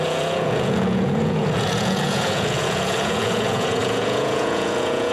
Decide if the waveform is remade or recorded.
remade